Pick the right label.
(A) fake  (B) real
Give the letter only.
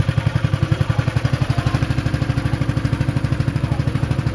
A